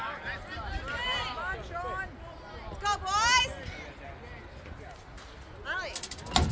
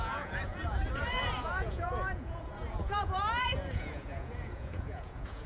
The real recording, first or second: first